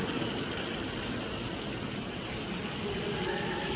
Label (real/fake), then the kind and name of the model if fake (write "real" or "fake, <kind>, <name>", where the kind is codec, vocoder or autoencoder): real